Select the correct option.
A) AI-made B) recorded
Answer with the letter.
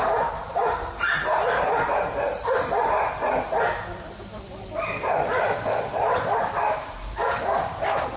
B